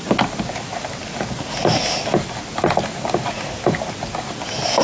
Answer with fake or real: real